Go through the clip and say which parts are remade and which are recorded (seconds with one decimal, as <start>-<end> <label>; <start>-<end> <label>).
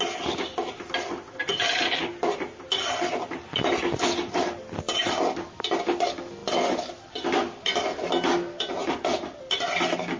0.0-10.2 recorded